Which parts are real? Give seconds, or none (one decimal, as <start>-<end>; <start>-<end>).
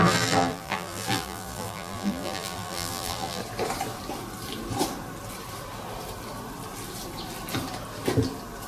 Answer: 3.4-8.7